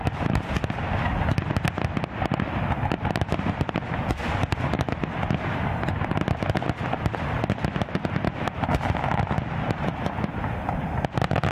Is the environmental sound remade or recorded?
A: recorded